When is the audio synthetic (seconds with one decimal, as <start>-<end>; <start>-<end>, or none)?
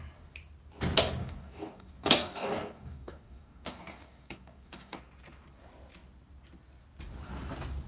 1.2-5.0